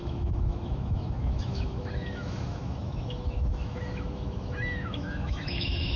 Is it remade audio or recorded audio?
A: remade